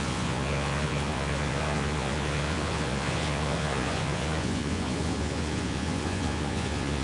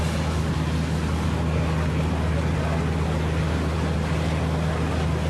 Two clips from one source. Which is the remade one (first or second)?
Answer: first